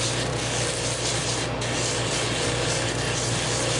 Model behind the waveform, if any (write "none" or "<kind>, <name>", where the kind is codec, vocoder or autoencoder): none